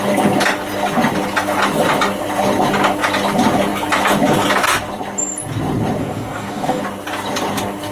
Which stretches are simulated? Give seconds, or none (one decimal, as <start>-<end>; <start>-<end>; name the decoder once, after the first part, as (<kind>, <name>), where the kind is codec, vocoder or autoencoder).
6.0-6.8 (codec, DAC)